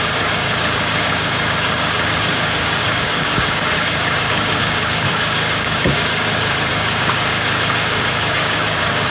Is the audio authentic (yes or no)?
no